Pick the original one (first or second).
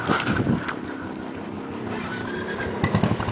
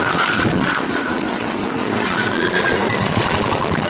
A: first